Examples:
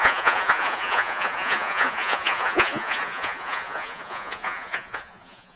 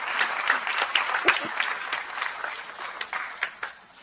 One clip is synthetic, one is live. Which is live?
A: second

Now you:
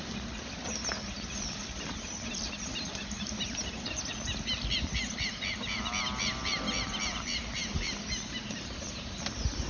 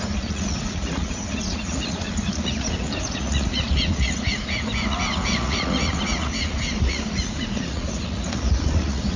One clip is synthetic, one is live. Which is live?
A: first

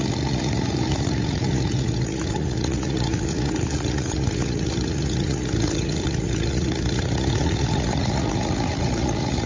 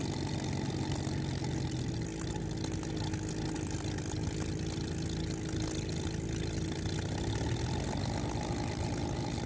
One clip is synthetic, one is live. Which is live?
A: second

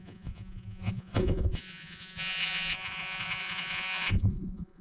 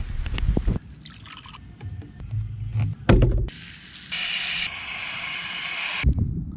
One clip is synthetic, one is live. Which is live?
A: second